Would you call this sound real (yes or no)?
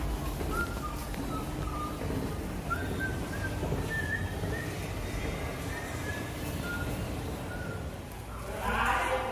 yes